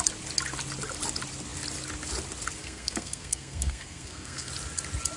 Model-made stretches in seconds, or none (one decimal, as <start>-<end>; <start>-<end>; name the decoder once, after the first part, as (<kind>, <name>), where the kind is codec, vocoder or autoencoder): 2.6-4.5 (codec, SNAC)